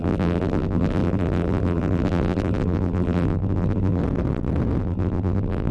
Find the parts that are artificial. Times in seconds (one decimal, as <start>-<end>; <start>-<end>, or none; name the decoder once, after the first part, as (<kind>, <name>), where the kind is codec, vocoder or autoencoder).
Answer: 0.0-4.0 (vocoder, BigVGAN v2); 4.8-5.7